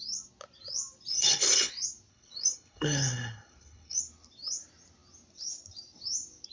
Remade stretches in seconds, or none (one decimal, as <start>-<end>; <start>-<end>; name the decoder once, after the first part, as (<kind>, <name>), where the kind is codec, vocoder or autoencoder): 1.1-1.7 (codec, HILCodec); 2.1-4.0